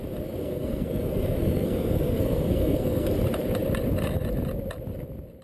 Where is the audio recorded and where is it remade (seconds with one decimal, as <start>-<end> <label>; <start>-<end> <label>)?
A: 0.0-0.4 recorded; 0.4-3.1 remade; 3.1-5.4 recorded